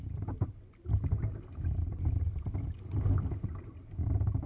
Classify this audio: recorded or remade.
recorded